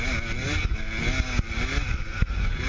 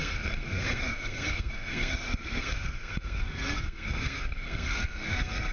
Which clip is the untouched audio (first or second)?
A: first